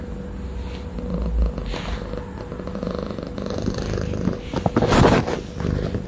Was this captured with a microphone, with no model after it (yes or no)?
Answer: yes